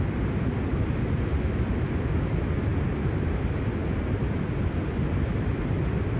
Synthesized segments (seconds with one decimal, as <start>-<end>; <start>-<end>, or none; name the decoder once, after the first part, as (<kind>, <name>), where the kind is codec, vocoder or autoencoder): none